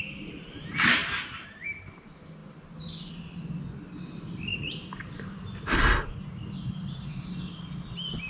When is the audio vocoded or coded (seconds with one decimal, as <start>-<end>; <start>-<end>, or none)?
1.0-1.9